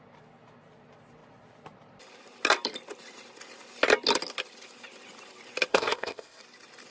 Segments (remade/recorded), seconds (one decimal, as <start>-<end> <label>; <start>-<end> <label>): 0.0-5.7 recorded; 5.7-6.4 remade; 6.4-6.9 recorded